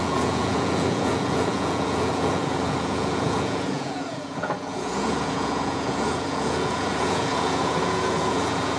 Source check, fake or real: fake